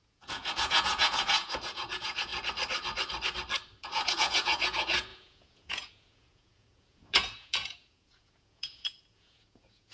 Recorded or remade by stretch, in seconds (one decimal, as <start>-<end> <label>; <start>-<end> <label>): 0.0-2.3 remade; 2.3-3.8 recorded; 3.8-9.9 remade